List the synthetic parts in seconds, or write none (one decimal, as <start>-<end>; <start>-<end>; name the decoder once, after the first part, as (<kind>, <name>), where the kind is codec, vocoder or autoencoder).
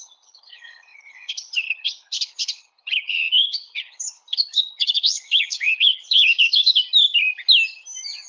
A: 0.0-6.8 (codec, HILCodec)